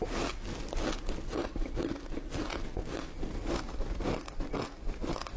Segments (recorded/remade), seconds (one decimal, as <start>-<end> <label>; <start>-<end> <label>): 0.0-5.4 recorded